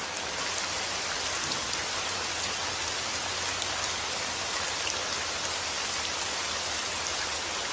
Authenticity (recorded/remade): recorded